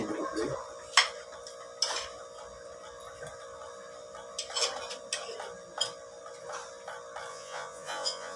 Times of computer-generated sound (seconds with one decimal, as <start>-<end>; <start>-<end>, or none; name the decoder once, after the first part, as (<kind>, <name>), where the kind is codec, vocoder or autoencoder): 7.3-8.4 (vocoder, Vocos)